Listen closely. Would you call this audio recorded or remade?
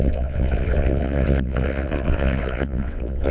remade